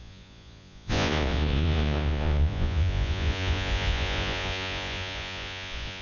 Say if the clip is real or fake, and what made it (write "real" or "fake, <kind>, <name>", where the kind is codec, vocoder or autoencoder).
fake, vocoder, Vocos